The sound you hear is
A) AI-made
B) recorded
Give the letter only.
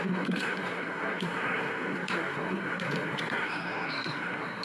A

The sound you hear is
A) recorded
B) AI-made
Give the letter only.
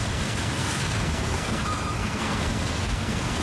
B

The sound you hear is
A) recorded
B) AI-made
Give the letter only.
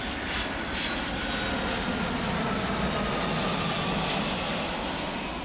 A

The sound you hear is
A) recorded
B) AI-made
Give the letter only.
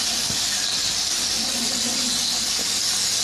A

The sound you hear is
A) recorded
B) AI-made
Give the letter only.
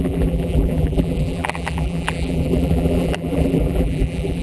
B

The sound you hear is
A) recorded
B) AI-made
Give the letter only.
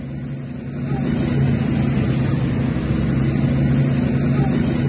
A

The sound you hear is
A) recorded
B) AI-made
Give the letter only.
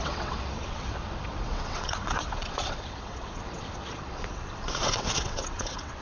B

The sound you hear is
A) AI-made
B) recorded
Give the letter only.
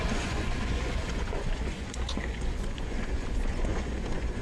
A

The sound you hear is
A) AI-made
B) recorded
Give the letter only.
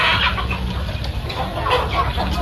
B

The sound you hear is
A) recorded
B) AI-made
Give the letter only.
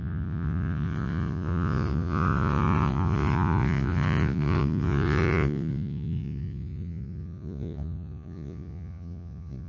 B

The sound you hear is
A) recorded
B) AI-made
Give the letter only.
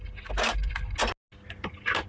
A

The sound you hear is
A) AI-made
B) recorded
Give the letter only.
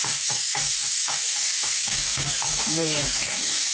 A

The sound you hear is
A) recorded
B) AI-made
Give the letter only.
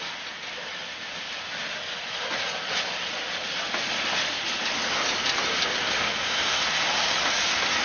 A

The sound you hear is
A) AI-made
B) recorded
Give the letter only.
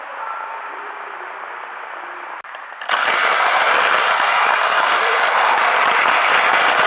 B